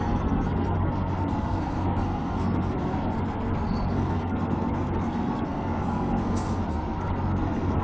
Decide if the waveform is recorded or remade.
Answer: remade